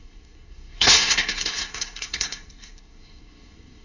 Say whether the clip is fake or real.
fake